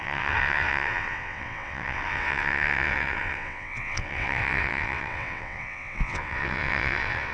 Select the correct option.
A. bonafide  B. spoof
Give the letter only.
B